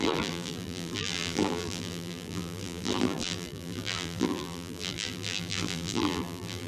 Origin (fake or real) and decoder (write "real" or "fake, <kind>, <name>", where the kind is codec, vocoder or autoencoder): fake, vocoder, BigVGAN v2